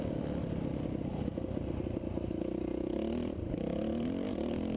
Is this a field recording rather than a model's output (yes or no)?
yes